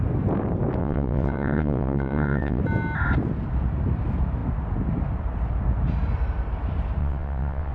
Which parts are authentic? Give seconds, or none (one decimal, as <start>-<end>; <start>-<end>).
0.0-0.8; 2.6-7.0